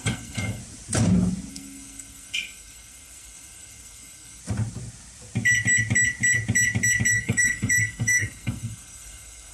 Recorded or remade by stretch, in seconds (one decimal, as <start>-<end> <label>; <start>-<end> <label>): 0.0-0.6 remade; 0.6-1.5 recorded; 1.5-4.4 remade; 4.4-7.1 recorded; 7.1-9.5 remade